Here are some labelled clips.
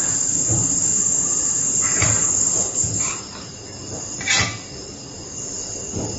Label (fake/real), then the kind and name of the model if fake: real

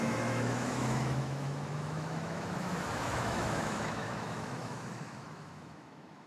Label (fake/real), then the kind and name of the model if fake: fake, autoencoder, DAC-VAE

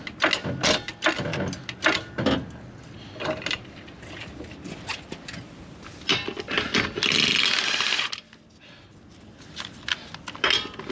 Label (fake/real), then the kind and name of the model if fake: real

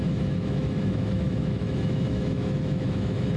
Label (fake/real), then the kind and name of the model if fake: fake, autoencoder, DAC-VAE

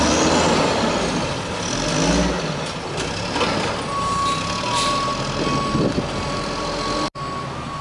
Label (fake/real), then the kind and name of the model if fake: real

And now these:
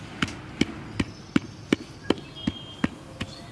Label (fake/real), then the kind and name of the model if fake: real